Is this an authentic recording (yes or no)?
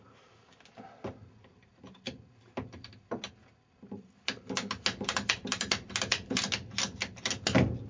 yes